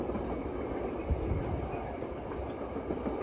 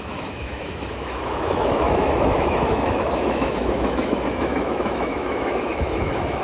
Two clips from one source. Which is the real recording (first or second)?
first